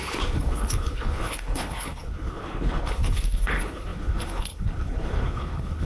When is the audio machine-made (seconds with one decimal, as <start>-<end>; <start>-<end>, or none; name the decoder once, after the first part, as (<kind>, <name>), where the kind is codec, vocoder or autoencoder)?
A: 0.0-5.8 (codec, HILCodec)